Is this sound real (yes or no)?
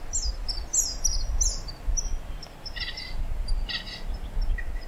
yes